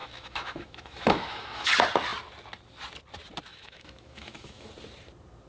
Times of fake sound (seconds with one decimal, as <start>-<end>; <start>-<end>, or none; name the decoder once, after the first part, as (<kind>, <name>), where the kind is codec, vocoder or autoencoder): 0.0-1.7 (autoencoder, DAC-VAE); 3.5-4.7